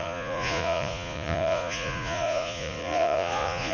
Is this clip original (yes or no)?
no